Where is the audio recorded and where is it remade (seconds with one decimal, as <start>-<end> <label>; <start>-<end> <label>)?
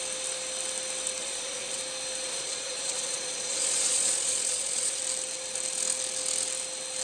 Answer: 0.0-1.2 recorded; 1.2-1.8 remade; 1.8-2.3 recorded; 2.3-5.0 remade; 5.0-7.0 recorded